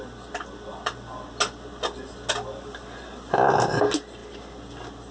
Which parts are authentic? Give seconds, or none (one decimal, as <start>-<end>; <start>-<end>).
0.0-5.1